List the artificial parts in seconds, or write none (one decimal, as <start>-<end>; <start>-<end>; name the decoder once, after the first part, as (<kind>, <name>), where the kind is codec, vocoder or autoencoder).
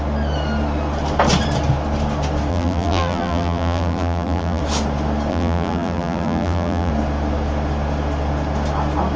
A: 2.5-4.6 (vocoder, BigVGAN v2); 5.3-6.9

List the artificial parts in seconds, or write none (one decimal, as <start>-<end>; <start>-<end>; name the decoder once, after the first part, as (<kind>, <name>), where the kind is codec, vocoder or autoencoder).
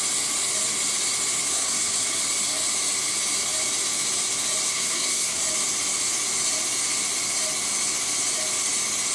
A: 1.5-2.2 (codec, SNAC); 4.7-5.4